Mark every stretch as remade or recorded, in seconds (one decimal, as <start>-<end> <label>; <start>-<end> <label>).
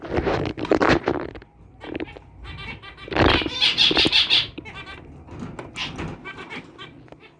0.0-7.4 recorded